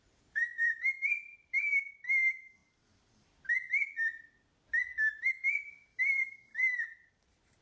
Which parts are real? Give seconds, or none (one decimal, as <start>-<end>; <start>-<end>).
2.6-6.0